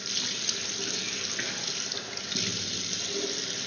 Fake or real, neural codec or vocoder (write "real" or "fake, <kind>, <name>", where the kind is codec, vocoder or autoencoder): real